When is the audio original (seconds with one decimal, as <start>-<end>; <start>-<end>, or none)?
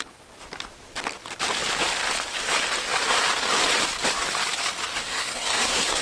0.0-4.9